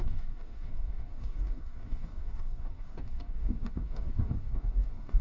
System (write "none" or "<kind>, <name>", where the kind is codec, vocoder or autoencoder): codec, DAC